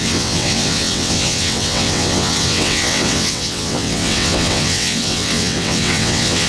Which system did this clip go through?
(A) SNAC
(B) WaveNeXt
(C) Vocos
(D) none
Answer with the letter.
B